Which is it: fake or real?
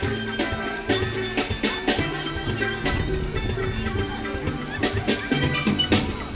real